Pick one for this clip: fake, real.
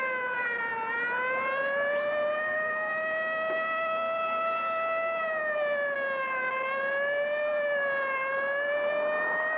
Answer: real